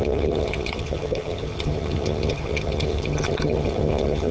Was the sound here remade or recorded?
remade